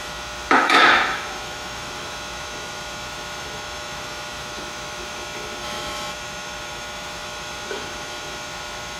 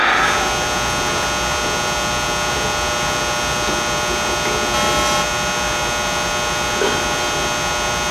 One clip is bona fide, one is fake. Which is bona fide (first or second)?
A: second